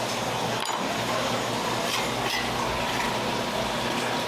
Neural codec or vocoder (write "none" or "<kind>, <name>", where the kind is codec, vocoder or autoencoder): none